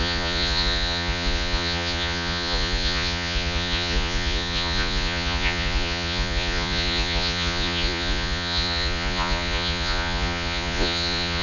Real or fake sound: fake